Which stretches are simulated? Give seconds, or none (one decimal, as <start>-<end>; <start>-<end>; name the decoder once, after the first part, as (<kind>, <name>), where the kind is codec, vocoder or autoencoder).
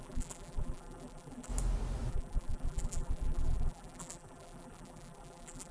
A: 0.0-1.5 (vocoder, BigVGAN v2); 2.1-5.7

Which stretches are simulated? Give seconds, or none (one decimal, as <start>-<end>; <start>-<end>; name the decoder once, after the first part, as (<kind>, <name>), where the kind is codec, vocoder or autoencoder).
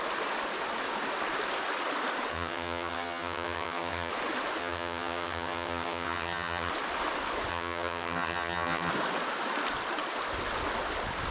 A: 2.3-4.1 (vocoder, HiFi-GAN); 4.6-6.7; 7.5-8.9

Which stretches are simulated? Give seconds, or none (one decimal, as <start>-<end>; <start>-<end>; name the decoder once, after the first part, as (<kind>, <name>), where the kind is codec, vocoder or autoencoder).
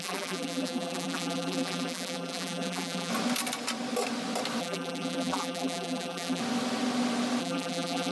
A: 0.0-3.1 (vocoder, BigVGAN v2); 4.6-6.4; 7.4-8.1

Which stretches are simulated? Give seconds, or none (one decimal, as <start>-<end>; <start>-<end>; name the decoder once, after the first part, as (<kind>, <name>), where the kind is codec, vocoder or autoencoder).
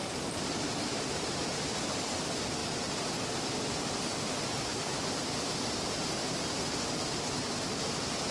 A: 0.0-1.6 (vocoder, BigVGAN v2); 4.7-5.6; 6.2-7.0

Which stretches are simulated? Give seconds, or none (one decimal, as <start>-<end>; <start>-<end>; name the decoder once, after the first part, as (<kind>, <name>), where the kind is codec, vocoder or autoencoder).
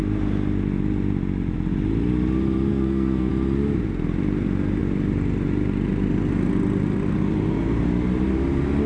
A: 2.7-3.3 (codec, SNAC)